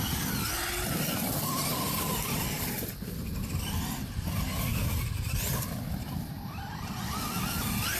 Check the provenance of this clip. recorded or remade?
recorded